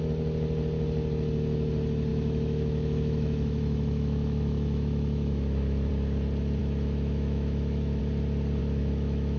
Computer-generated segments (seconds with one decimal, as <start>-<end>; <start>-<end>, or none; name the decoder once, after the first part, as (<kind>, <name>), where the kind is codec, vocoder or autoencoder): 2.1-5.9 (autoencoder, DAC-VAE); 6.6-8.0; 8.6-9.4